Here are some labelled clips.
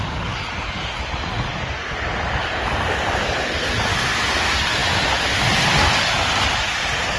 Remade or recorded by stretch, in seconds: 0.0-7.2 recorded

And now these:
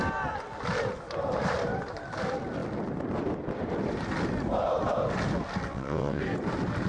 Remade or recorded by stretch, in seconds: 0.0-5.7 recorded; 5.7-6.2 remade; 6.2-6.9 recorded

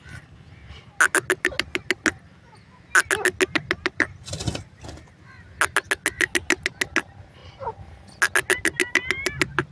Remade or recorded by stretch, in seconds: 0.0-9.7 recorded

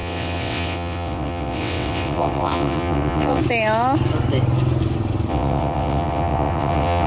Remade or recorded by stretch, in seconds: 0.0-3.4 remade; 3.4-5.3 recorded; 5.3-7.1 remade

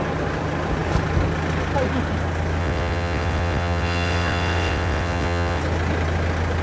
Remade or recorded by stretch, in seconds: 0.0-2.6 recorded; 2.6-5.6 remade; 5.6-6.6 recorded

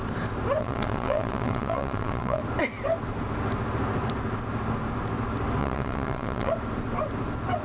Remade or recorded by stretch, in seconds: 0.0-0.6 recorded; 0.6-2.4 remade; 2.4-5.6 recorded; 5.6-6.5 remade; 6.5-7.6 recorded

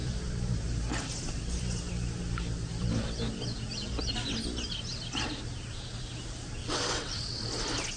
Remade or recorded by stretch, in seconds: 0.0-6.6 recorded; 6.6-7.4 remade; 7.4-8.0 recorded